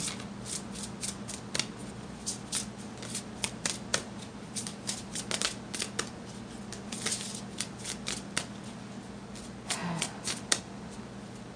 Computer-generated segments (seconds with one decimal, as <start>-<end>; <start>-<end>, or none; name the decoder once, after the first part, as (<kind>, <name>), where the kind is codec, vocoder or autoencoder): 3.9-5.1 (vocoder, BigVGAN v2)